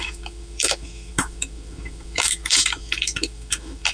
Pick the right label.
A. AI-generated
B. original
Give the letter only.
A